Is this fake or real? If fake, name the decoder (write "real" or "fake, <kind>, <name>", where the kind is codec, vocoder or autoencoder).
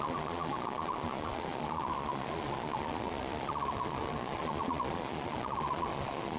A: fake, vocoder, Vocos